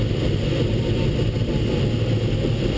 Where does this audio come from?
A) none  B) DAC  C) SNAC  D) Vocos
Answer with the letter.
A